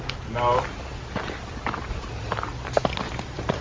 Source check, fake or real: real